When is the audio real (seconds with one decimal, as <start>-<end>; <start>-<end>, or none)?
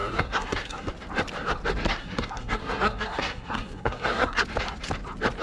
0.9-1.9; 4.4-5.4